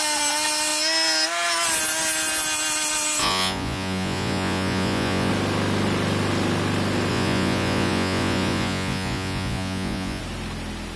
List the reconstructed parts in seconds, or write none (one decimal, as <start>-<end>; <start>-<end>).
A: 3.2-5.3; 7.1-10.2